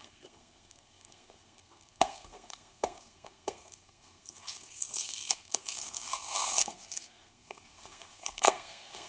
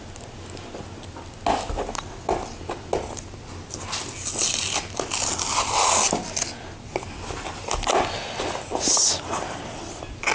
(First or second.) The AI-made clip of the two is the first